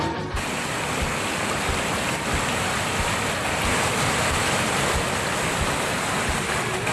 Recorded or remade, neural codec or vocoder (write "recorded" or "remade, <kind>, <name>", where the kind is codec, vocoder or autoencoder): recorded